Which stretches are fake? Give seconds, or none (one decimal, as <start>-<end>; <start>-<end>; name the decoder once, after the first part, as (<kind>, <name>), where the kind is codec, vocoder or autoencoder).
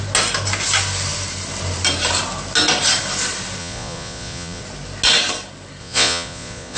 3.6-4.6 (vocoder, Vocos); 5.8-6.8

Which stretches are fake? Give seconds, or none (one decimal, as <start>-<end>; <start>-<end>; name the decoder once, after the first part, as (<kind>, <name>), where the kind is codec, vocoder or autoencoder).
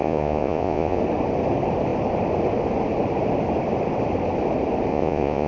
0.0-1.0 (vocoder, Vocos); 4.9-5.5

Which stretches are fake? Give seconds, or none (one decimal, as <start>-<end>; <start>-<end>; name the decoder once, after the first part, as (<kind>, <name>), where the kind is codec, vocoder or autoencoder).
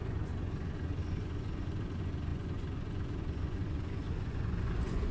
0.0-5.1 (vocoder, Vocos)